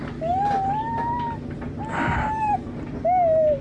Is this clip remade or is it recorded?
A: recorded